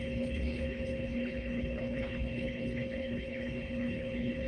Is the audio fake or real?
fake